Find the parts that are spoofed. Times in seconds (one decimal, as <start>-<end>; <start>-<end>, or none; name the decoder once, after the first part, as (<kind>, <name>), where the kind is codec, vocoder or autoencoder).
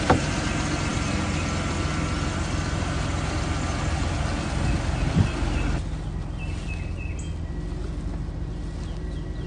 none